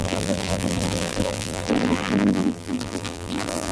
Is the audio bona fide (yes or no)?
no